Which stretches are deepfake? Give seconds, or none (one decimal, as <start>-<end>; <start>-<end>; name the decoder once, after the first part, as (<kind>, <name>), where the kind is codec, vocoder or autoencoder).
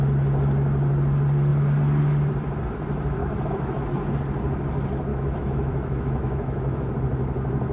3.2-3.7 (autoencoder, DAC-VAE); 5.1-6.9